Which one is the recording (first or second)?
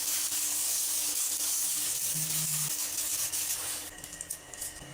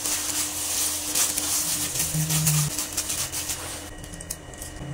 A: second